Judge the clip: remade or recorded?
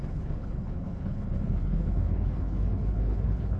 remade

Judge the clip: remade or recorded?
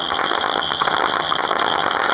remade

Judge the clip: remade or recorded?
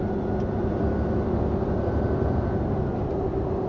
recorded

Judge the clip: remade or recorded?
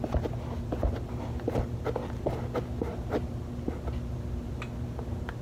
recorded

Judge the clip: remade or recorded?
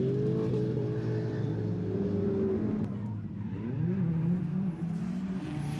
recorded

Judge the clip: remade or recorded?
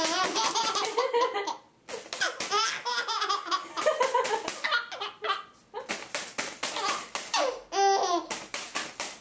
recorded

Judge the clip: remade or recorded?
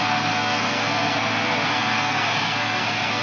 remade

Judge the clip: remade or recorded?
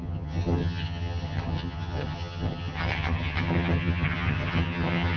remade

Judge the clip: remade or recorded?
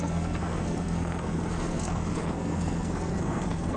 remade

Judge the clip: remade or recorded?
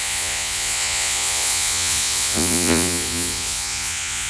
remade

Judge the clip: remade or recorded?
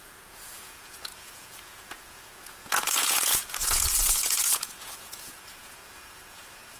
remade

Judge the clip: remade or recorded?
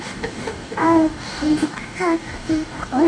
remade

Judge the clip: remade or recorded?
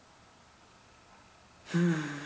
recorded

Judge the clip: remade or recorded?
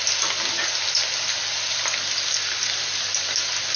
recorded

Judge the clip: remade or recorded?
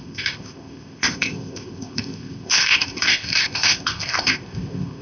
remade